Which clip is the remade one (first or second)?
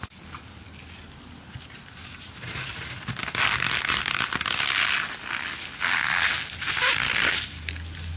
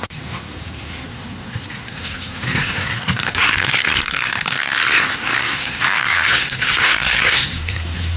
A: second